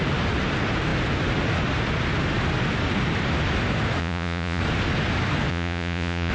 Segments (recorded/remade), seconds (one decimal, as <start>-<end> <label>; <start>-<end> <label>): 0.0-4.0 recorded; 4.0-4.6 remade; 4.6-5.5 recorded; 5.5-6.3 remade